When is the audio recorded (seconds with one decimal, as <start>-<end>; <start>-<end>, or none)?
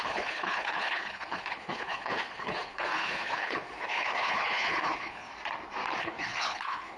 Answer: 5.3-6.0